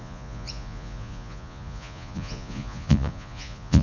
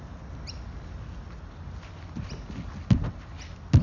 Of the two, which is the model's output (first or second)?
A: first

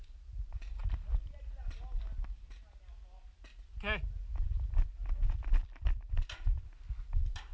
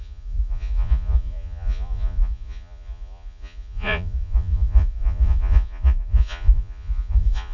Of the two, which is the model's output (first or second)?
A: second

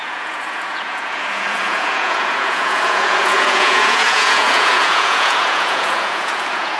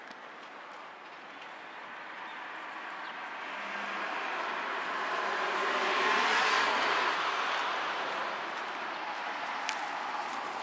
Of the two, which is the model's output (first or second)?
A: first